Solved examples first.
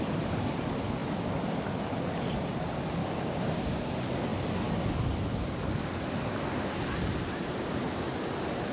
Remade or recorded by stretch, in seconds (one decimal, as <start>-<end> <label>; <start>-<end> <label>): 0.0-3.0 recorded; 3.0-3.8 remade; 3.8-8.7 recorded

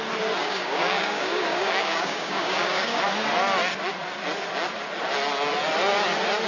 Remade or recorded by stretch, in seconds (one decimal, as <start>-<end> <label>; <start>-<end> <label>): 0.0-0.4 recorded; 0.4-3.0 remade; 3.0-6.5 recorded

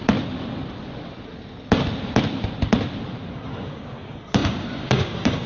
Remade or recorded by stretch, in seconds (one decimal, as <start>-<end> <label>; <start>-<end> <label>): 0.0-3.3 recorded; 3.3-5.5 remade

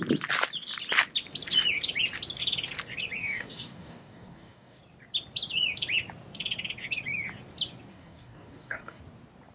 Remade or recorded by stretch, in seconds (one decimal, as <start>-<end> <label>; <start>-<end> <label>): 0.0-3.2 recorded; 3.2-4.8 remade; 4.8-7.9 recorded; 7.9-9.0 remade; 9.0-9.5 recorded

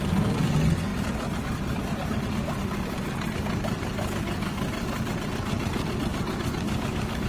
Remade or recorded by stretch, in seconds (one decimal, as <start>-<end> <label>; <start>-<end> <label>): 0.0-6.1 recorded; 6.1-7.3 remade

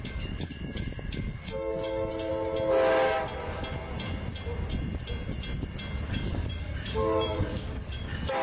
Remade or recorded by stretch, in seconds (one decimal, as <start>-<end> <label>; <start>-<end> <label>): 0.0-2.3 remade; 2.3-6.1 recorded; 6.1-8.4 remade